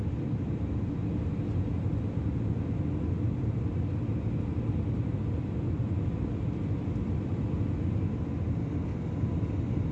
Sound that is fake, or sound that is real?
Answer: real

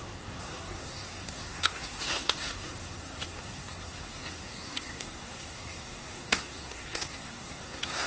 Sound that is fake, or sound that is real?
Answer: fake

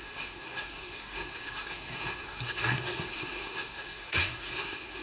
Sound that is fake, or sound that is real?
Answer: fake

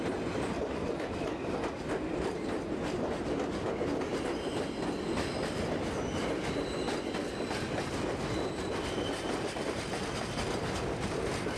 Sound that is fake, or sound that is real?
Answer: real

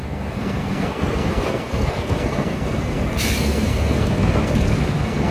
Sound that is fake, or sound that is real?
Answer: fake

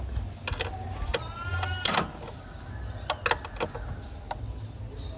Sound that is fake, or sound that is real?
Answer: real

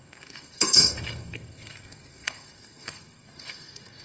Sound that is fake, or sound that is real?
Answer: fake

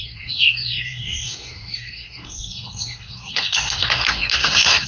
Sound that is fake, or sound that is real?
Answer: fake